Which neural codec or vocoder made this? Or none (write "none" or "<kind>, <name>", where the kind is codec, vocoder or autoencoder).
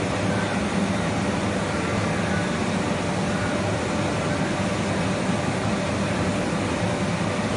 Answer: none